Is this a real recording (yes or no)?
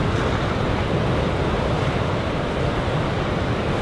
yes